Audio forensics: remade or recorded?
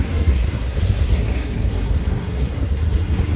remade